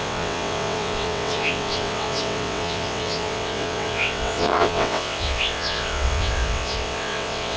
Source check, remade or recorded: remade